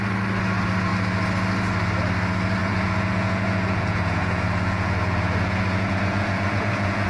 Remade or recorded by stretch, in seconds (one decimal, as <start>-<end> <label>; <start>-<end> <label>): 0.0-2.6 recorded; 2.6-7.1 remade